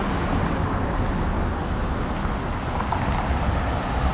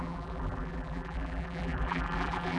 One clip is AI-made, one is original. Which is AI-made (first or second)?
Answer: second